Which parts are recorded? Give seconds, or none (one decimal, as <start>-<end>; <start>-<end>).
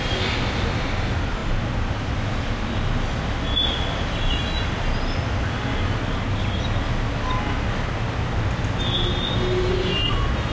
0.0-10.5